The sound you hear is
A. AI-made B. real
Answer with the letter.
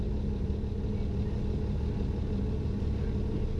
B